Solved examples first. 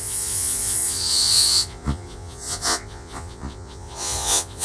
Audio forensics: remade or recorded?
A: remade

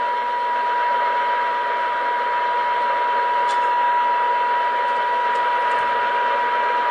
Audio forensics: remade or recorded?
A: recorded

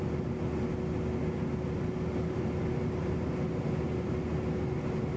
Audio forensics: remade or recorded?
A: recorded